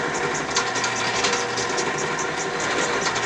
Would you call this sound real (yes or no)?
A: yes